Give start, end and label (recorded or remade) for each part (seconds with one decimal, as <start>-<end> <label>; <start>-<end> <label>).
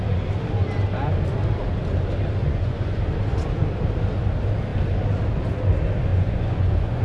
0.0-2.4 recorded; 2.4-3.0 remade; 3.0-6.1 recorded; 6.1-7.0 remade